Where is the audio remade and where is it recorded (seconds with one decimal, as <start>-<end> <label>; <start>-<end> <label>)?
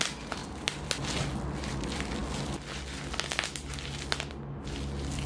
0.0-5.3 recorded